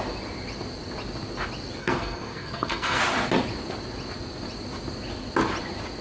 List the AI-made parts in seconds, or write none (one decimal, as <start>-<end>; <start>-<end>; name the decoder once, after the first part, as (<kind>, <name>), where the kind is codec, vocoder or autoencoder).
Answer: 1.8-3.0 (codec, SNAC)